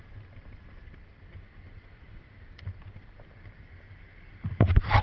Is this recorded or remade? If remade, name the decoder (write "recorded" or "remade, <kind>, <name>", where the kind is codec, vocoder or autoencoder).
recorded